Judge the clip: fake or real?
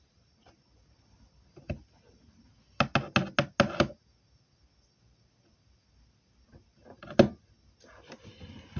real